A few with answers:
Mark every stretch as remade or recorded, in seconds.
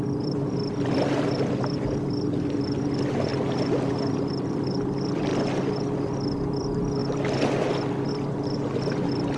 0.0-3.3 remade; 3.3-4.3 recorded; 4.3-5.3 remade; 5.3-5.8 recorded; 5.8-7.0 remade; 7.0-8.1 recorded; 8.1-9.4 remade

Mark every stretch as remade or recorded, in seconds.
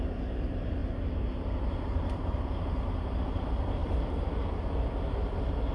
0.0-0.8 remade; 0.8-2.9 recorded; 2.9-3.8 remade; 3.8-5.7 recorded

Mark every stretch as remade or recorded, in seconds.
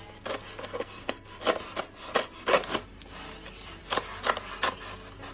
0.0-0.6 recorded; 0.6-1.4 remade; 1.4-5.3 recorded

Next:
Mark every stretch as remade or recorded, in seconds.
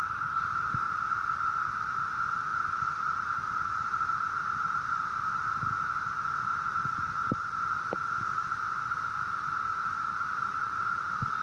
0.0-11.4 recorded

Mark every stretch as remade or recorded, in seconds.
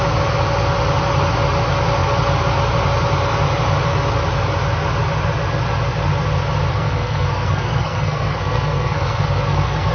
0.0-6.7 recorded; 6.7-9.9 remade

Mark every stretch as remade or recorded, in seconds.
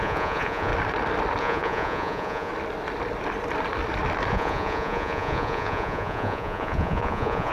0.0-0.7 remade; 0.7-1.4 recorded; 1.4-2.5 remade; 2.5-4.3 recorded; 4.3-7.5 remade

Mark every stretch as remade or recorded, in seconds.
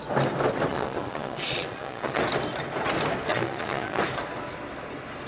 0.0-0.7 recorded; 0.7-2.2 remade; 2.2-3.3 recorded; 3.3-4.0 remade; 4.0-5.3 recorded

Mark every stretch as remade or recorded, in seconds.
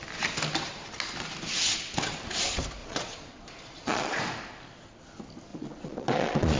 0.0-2.8 recorded; 2.8-4.2 remade; 4.2-5.5 recorded; 5.5-6.6 remade